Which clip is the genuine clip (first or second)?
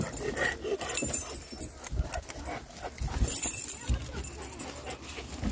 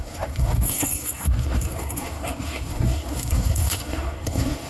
first